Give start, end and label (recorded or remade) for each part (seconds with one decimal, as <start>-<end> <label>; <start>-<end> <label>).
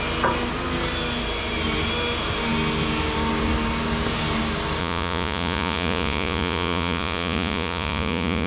0.0-4.8 recorded; 4.8-8.5 remade